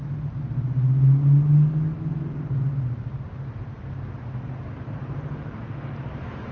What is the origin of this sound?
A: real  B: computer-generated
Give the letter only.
A